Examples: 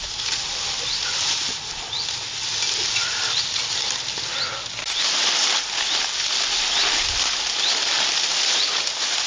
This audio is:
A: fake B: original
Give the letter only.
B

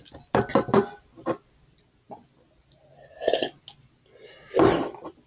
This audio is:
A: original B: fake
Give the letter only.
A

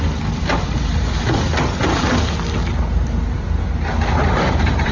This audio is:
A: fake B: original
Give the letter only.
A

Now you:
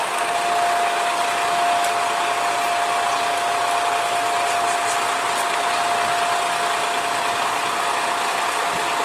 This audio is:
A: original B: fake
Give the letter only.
A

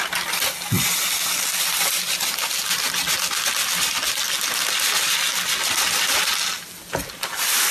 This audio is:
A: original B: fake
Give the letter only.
A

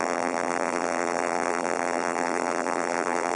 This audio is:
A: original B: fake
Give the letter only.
B